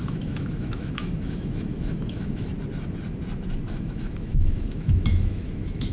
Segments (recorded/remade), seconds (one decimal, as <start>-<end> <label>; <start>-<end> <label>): 0.0-2.5 remade; 2.5-3.7 recorded; 3.7-5.9 remade